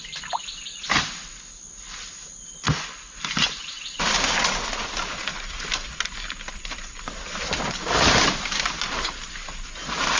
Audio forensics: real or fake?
real